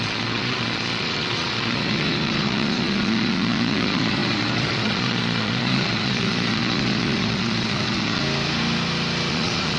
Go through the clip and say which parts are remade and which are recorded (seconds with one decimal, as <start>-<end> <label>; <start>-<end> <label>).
0.0-8.2 remade; 8.2-9.3 recorded; 9.3-9.8 remade